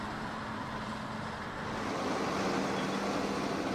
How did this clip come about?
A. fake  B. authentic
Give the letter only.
B